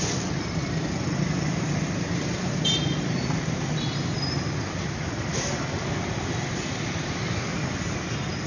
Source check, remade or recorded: recorded